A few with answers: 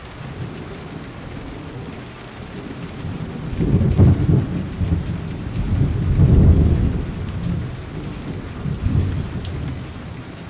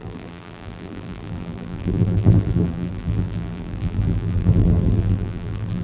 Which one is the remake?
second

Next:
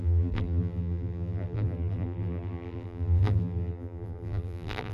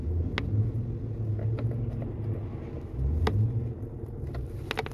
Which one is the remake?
first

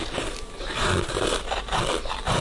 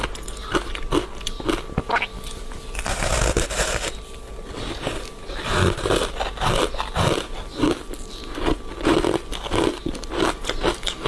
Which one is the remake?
first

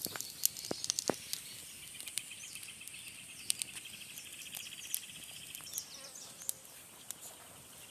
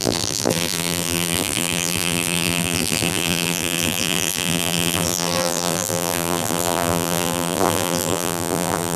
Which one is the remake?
second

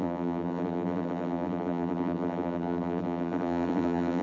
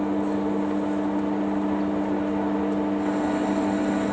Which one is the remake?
first